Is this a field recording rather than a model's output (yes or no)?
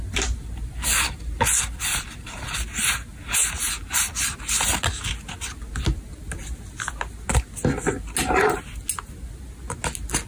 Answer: yes